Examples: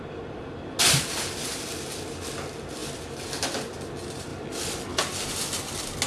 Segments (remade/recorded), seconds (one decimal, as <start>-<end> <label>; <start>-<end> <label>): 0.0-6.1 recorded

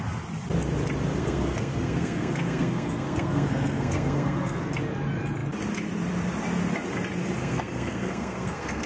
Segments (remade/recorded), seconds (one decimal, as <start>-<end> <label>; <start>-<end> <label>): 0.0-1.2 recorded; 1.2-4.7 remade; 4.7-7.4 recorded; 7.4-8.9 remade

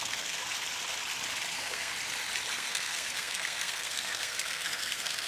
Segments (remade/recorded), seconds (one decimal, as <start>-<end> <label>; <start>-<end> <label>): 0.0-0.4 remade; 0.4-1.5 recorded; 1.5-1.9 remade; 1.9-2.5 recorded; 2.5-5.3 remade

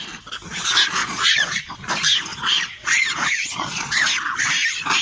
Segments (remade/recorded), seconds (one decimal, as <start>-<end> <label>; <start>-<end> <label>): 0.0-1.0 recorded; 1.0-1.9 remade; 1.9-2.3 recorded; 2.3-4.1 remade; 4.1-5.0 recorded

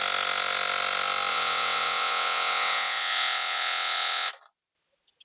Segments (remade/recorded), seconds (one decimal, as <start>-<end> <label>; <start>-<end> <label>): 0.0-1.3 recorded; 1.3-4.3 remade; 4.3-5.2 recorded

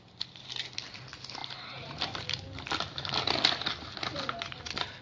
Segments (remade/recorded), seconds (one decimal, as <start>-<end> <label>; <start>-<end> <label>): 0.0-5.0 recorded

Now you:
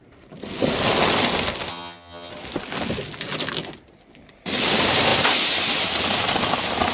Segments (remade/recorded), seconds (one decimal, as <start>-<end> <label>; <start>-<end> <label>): 0.0-1.7 recorded; 1.7-2.3 remade; 2.3-6.9 recorded

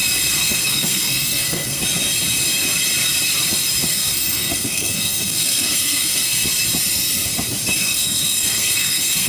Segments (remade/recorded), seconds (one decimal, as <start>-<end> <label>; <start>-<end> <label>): 0.0-0.4 recorded; 0.4-1.8 remade; 1.8-3.9 recorded; 3.9-6.5 remade; 6.5-7.8 recorded; 7.8-9.3 remade